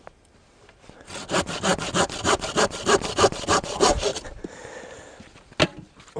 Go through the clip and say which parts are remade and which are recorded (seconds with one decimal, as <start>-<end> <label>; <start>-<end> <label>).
0.0-6.2 recorded